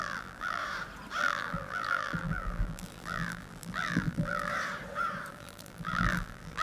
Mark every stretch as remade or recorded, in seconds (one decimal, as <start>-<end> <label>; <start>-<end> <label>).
0.0-0.6 remade; 0.6-1.2 recorded; 1.2-4.5 remade; 4.5-5.3 recorded; 5.3-6.6 remade